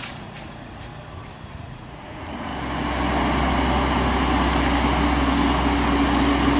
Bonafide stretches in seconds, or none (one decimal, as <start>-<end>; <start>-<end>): 0.9-1.5; 2.5-6.6